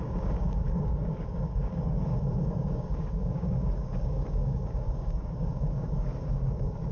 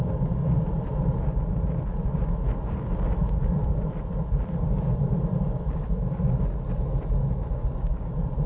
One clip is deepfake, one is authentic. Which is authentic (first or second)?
second